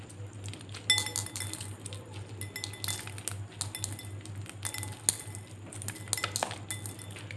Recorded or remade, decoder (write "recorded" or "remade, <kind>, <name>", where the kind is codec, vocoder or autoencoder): recorded